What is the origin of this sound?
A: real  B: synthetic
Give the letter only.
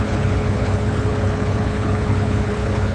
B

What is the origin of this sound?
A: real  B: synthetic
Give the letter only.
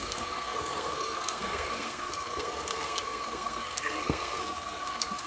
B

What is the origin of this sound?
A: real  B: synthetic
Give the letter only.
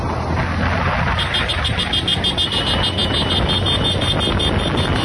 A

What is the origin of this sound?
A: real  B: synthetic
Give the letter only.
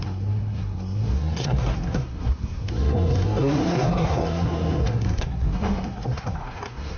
B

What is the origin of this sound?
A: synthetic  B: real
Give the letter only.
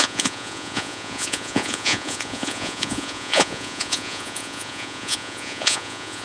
A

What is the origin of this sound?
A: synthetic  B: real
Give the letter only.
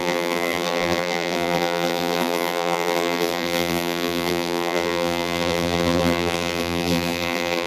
A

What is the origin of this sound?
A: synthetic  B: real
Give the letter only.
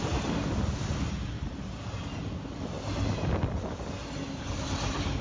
B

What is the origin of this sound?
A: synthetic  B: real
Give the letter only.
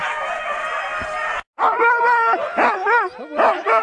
B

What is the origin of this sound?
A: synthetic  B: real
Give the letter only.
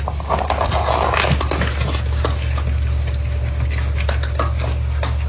B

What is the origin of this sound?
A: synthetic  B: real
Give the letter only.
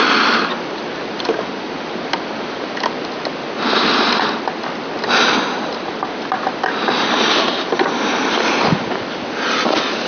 B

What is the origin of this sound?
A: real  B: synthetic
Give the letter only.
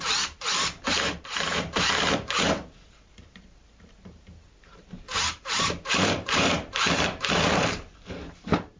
B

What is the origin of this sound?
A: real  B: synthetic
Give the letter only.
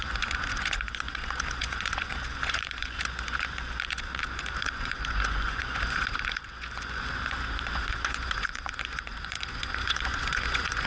B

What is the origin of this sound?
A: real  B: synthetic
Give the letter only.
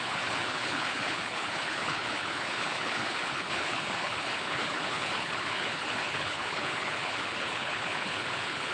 B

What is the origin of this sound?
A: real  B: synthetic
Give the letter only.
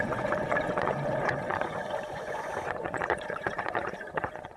B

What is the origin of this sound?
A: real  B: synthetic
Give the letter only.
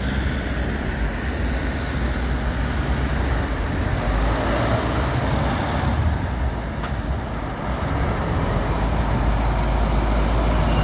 A